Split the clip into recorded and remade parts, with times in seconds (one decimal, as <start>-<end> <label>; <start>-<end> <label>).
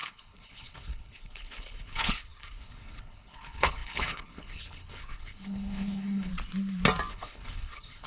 0.0-6.3 remade; 6.3-7.1 recorded; 7.1-8.1 remade